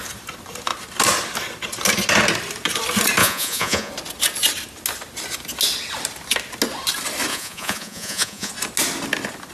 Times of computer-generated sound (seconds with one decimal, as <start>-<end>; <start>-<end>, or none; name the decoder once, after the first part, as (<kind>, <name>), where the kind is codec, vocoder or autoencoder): 3.2-3.9 (vocoder, Vocos); 7.3-8.5